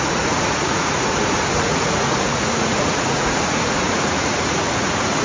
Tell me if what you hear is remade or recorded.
remade